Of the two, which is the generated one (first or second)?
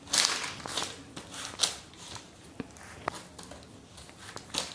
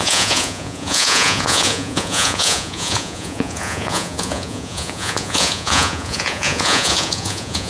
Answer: second